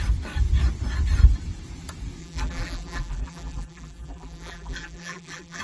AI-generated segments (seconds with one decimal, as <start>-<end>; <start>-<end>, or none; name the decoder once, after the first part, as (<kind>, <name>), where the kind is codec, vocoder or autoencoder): 2.2-5.6 (vocoder, BigVGAN v2)